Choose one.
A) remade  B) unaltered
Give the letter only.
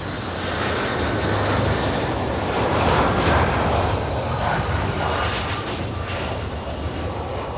B